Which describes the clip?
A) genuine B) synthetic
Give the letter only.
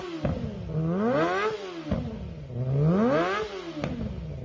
A